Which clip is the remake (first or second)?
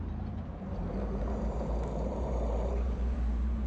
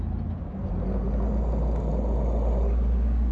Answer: first